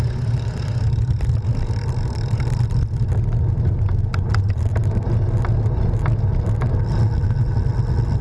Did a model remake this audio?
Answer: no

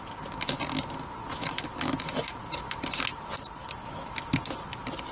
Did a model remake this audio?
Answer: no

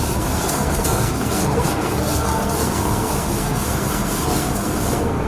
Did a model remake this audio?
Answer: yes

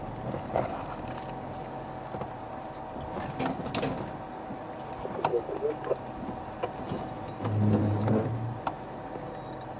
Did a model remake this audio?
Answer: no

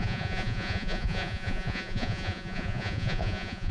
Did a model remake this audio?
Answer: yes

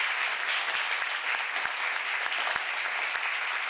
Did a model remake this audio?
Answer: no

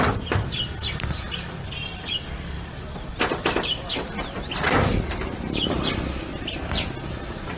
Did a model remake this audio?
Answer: no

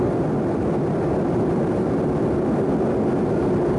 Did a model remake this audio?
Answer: no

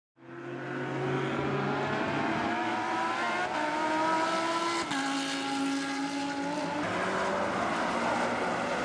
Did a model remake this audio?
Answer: no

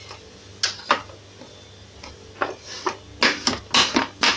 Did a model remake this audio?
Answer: no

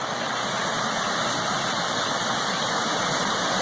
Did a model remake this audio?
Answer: no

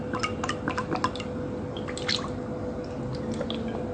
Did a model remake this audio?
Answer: no